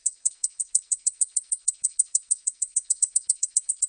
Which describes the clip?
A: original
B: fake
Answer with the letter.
B